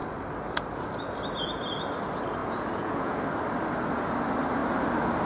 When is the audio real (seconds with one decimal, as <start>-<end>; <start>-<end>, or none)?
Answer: 0.0-2.4; 3.2-5.2

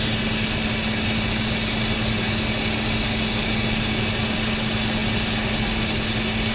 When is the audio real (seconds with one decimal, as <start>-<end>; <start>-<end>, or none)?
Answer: 0.0-6.5